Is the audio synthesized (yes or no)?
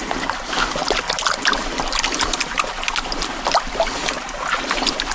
no